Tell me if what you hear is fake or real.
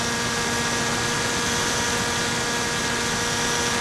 real